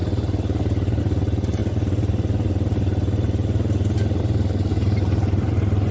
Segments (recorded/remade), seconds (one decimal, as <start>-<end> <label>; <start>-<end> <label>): 0.0-4.7 recorded; 4.7-5.5 remade; 5.5-5.9 recorded